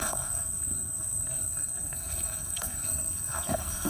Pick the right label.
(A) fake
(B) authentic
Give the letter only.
A